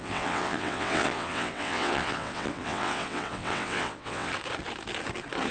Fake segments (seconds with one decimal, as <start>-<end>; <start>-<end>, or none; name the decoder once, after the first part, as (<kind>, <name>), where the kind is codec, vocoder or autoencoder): 0.0-4.3 (vocoder, WaveNeXt)

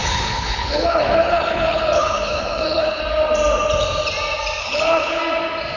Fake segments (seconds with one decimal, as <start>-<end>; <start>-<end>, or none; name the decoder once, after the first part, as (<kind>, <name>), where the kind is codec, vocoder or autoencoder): 0.0-3.0 (codec, HILCodec); 4.6-5.2

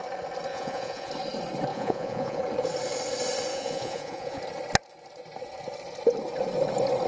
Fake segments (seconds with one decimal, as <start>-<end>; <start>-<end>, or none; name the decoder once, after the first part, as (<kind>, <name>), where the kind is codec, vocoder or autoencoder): 0.5-1.1 (vocoder, Vocos); 1.7-2.4; 3.5-4.4

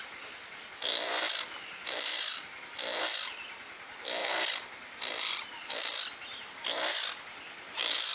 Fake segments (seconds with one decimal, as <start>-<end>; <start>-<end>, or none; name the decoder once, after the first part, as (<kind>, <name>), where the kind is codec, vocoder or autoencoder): none